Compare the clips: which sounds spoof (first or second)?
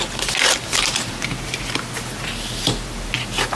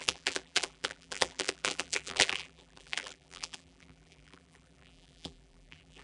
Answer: second